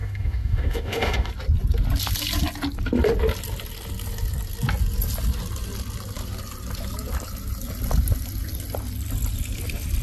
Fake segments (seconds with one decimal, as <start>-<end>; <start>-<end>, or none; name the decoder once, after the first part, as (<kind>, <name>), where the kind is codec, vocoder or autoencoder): 0.0-1.3 (autoencoder, DAC-VAE)